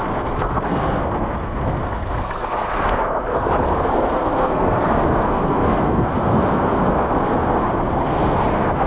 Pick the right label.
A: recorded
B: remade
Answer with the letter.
B